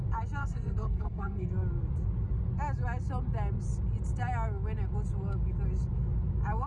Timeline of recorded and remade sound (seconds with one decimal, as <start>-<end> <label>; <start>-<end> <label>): 0.0-0.4 recorded; 0.4-1.5 remade; 1.5-6.7 recorded